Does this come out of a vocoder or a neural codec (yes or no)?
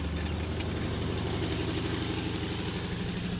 no